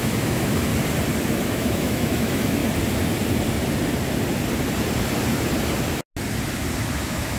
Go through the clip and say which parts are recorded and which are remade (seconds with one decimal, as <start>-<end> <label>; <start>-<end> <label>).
0.0-0.7 remade; 0.7-1.3 recorded; 1.3-2.6 remade; 2.6-6.9 recorded; 6.9-7.4 remade